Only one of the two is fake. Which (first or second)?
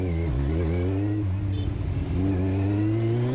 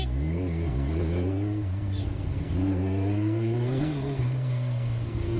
second